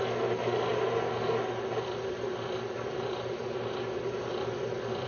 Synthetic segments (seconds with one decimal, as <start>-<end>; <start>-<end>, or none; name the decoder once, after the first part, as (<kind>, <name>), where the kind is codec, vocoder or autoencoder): none